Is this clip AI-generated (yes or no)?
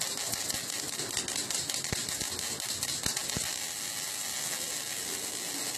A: no